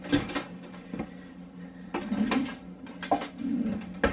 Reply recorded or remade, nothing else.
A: recorded